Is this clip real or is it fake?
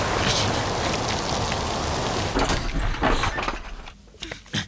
real